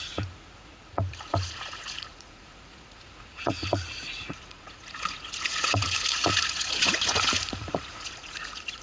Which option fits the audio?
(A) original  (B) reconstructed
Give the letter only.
B